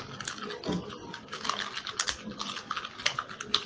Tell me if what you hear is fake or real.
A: real